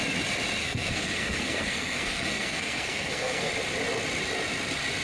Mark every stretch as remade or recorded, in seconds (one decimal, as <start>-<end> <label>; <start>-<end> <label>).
0.0-0.6 recorded; 0.6-3.5 remade; 3.5-5.0 recorded